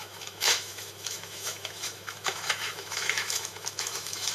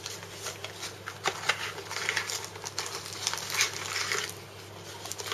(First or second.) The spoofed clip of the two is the first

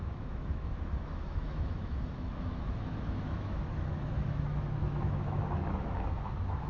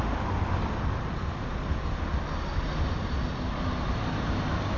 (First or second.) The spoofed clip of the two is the first